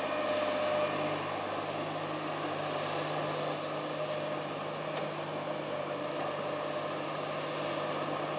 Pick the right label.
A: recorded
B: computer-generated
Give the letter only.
A